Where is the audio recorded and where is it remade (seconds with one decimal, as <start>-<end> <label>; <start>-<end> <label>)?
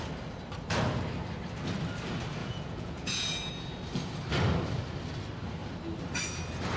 0.0-2.4 recorded; 2.4-3.5 remade; 3.5-6.8 recorded